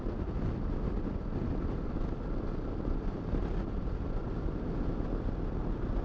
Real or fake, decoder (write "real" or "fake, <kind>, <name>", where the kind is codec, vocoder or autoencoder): real